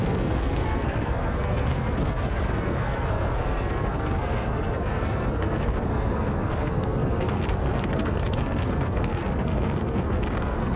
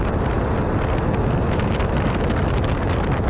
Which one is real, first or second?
second